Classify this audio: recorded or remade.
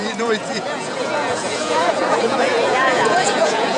remade